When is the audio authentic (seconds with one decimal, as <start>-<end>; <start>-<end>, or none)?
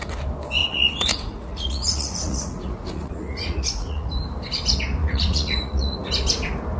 0.0-0.6; 4.1-5.0; 6.1-6.8